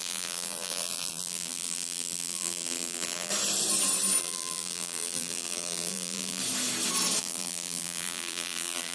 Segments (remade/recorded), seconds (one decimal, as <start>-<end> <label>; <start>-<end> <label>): 0.0-3.3 remade; 3.3-4.2 recorded; 4.2-6.4 remade; 6.4-7.2 recorded; 7.2-8.9 remade